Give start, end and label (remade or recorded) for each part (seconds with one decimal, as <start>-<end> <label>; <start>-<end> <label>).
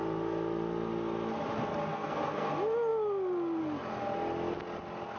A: 0.0-1.9 recorded; 1.9-2.5 remade; 2.5-5.2 recorded